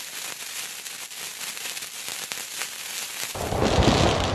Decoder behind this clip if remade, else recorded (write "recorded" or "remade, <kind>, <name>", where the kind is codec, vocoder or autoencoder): recorded